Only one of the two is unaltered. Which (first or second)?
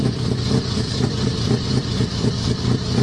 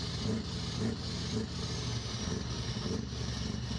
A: second